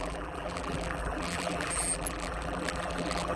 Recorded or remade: remade